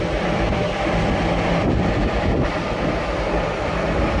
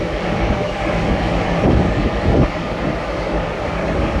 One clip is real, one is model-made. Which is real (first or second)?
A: first